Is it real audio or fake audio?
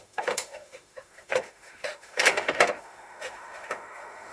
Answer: fake